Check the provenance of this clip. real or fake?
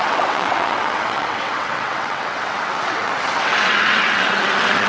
fake